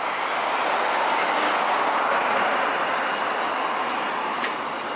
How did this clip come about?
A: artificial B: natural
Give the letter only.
B